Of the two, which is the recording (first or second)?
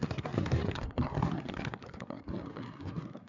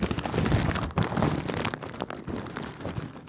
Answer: second